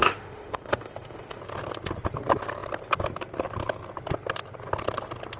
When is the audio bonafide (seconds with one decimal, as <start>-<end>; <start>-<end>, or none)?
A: 1.4-5.4